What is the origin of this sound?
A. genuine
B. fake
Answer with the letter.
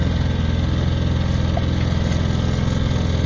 A